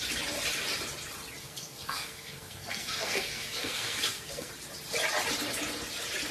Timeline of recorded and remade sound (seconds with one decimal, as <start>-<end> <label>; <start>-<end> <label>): 0.0-1.4 recorded; 1.4-4.5 remade; 4.5-6.3 recorded